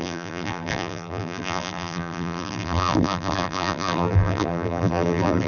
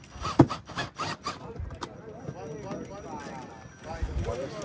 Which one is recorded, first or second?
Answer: second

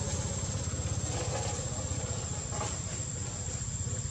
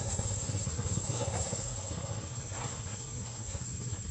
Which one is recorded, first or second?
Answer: first